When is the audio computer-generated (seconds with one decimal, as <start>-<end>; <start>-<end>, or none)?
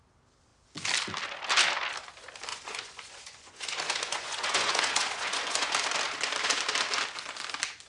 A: 2.5-5.7